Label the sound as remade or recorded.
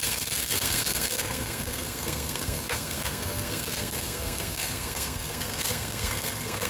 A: remade